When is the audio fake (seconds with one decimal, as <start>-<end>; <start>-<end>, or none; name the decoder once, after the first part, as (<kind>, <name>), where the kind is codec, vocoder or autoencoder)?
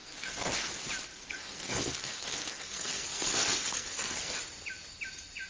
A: 0.0-0.7 (codec, SNAC); 1.1-4.4